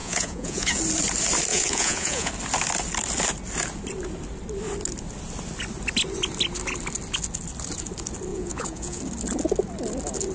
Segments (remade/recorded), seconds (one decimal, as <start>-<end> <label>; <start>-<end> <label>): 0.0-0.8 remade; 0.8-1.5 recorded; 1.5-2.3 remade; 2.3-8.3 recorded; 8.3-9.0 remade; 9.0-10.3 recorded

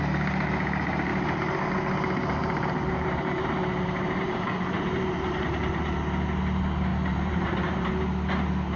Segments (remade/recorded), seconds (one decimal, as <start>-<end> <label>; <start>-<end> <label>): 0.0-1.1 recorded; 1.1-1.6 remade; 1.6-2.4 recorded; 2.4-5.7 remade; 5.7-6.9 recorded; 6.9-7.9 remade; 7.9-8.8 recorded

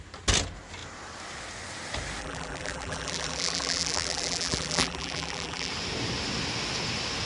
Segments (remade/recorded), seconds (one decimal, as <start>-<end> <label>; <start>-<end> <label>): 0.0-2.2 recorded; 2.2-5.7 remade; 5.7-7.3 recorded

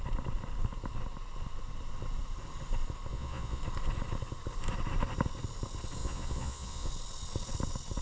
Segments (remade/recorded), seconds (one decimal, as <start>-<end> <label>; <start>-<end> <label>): 0.0-3.1 recorded; 3.1-3.6 remade; 3.6-6.0 recorded; 6.0-6.9 remade; 6.9-8.0 recorded